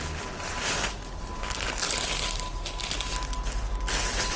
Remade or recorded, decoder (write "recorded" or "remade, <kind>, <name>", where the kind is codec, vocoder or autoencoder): recorded